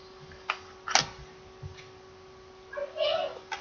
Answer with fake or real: real